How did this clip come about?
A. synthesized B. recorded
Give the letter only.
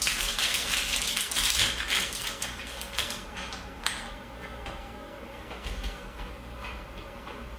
A